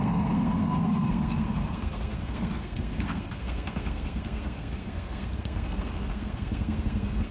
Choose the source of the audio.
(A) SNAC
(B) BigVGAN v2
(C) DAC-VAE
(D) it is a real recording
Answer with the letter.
A